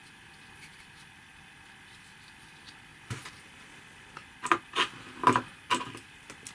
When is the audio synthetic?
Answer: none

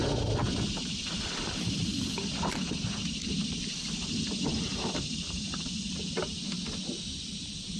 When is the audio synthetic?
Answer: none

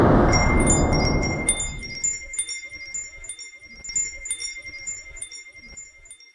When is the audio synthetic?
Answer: 4.4-5.8 (vocoder, BigVGAN v2)

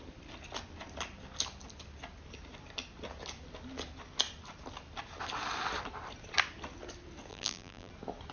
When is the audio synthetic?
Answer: 7.3-7.9 (vocoder, BigVGAN v2)